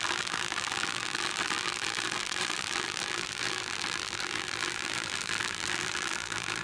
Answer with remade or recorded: remade